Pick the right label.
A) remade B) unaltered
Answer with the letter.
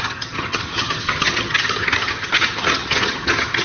A